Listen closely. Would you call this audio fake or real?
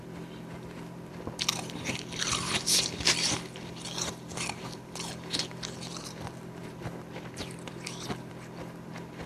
fake